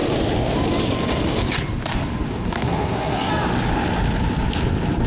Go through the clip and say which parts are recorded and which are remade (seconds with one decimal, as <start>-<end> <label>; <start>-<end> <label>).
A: 0.0-2.3 recorded; 2.3-3.3 remade; 3.3-5.1 recorded